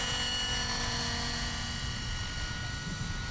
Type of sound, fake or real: real